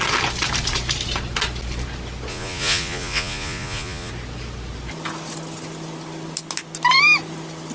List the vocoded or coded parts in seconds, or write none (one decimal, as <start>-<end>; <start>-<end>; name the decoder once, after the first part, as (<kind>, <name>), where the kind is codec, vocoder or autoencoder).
2.3-4.1 (vocoder, Vocos)